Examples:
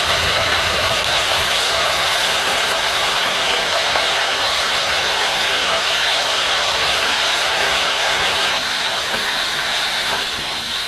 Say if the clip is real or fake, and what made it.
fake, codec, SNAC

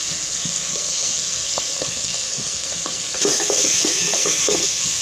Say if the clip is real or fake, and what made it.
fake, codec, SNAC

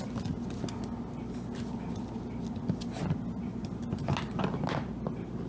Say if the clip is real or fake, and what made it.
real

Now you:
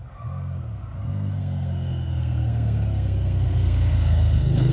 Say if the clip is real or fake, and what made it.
fake, codec, SNAC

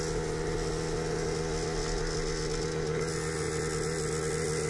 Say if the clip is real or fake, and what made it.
real